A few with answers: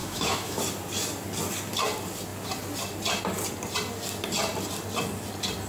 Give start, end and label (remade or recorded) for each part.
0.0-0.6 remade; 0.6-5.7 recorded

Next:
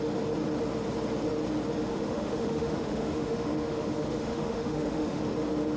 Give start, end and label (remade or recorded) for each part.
0.0-1.9 recorded; 1.9-5.2 remade; 5.2-5.8 recorded

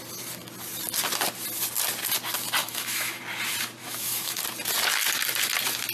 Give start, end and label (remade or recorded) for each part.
0.0-2.6 recorded; 2.6-3.2 remade; 3.2-3.8 recorded; 3.8-4.4 remade; 4.4-5.9 recorded

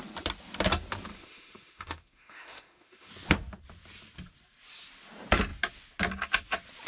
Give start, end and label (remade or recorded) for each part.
0.0-1.1 recorded; 1.1-3.1 remade; 3.1-6.9 recorded